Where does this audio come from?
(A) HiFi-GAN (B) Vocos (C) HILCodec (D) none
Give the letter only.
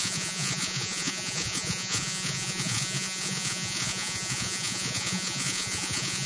B